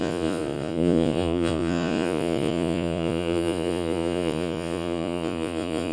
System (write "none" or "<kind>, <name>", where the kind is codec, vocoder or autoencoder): vocoder, Vocos